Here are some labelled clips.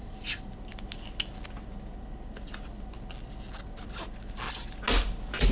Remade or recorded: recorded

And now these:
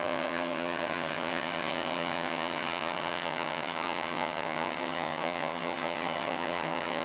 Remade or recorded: remade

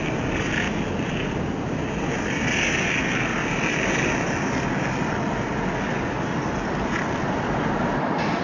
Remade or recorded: recorded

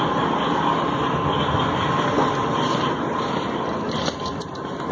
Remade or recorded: recorded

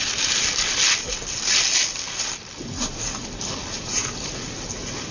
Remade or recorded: recorded